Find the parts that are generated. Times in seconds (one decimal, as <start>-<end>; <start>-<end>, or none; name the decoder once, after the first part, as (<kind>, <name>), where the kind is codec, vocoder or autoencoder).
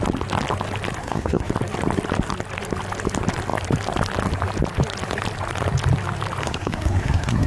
1.0-1.5 (codec, SNAC); 6.4-7.5